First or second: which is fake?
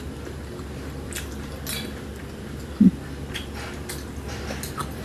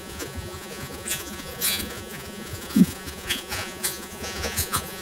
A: second